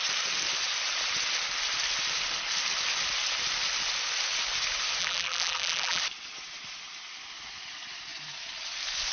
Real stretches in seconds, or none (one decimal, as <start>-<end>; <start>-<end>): 0.0-5.0; 6.0-9.1